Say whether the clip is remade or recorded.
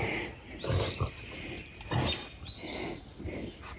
recorded